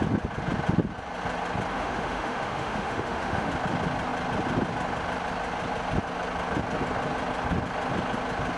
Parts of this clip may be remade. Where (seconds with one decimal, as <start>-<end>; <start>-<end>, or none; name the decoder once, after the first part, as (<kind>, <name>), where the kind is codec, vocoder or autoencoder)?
1.7-3.5 (autoencoder, DAC-VAE)